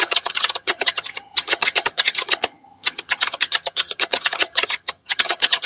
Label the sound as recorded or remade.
remade